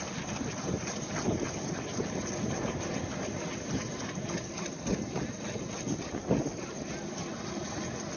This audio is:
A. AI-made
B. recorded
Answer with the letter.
B